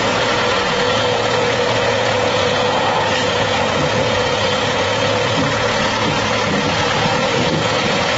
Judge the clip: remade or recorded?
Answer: remade